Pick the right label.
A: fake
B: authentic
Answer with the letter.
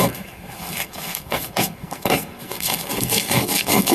A